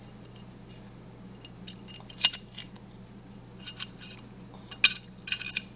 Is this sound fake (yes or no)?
no